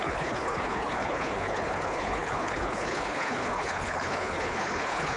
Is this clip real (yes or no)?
no